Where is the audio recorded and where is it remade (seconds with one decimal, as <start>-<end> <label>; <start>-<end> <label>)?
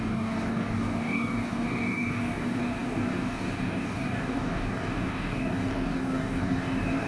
0.0-7.1 remade